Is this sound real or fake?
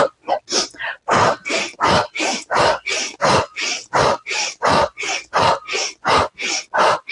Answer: real